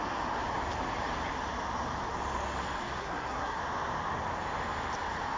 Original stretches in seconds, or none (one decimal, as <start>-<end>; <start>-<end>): 0.0-3.0; 3.6-5.4